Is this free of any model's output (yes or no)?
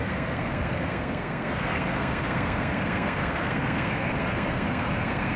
no